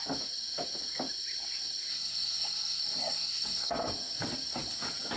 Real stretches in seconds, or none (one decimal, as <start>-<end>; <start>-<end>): 0.0-1.9; 3.7-5.2